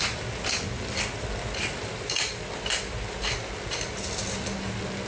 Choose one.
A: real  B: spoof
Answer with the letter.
A